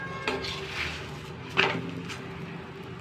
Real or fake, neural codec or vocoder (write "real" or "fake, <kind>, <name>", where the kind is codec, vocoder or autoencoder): real